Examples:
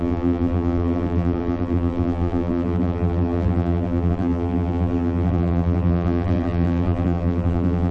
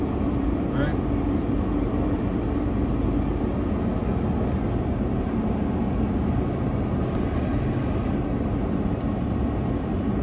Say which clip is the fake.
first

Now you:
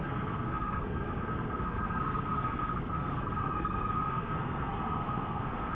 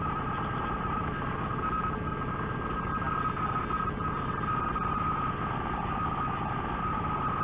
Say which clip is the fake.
first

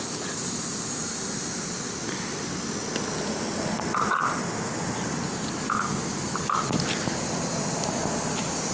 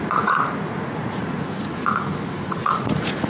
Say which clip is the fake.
second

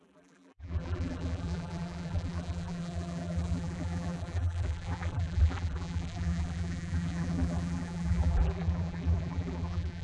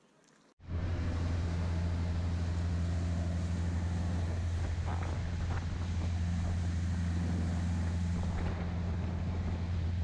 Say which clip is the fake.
first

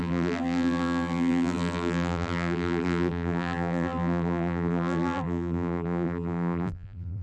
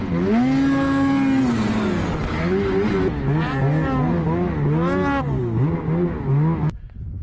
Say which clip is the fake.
first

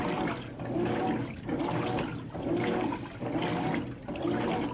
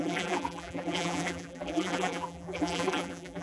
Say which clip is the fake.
second